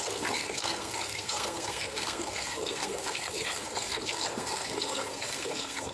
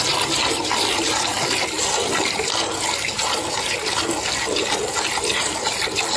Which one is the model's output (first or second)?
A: first